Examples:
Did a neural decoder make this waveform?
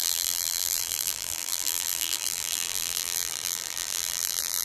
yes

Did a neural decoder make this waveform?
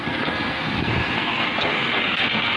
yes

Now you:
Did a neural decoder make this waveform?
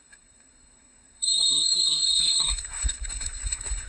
yes